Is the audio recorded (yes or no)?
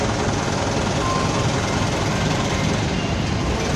yes